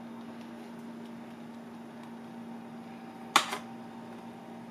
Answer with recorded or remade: recorded